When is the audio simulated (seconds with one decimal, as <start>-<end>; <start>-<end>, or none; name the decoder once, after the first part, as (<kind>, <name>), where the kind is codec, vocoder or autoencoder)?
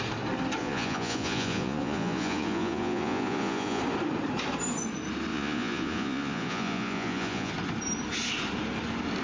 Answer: 0.6-3.8 (vocoder, Vocos); 5.3-7.5